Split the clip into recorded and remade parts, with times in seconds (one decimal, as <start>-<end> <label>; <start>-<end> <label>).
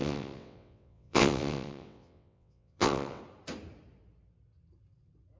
0.0-3.2 remade; 3.2-5.4 recorded